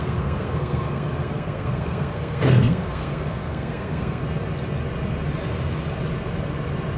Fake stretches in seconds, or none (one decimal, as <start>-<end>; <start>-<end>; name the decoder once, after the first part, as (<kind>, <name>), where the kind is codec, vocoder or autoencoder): 0.0-4.2 (codec, SNAC)